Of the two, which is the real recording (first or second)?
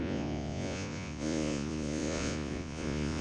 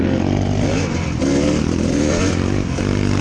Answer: second